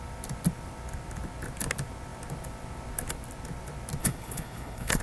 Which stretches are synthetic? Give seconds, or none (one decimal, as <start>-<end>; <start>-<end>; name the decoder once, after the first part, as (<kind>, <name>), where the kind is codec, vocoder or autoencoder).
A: 4.0-5.0 (codec, HILCodec)